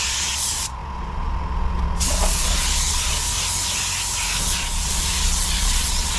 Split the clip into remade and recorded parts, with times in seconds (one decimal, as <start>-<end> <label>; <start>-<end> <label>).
0.0-3.3 remade; 3.3-4.4 recorded; 4.4-6.2 remade